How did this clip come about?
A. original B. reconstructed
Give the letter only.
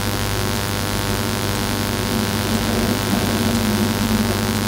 A